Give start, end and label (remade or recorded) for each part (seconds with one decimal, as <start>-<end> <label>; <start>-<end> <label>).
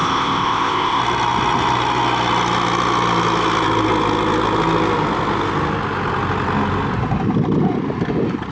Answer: 0.0-1.0 remade; 1.0-8.5 recorded